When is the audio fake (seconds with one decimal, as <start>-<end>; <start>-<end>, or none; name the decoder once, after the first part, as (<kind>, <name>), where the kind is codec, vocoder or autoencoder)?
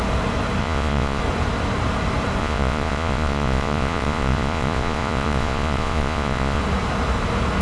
0.6-1.2 (vocoder, Vocos); 2.4-6.6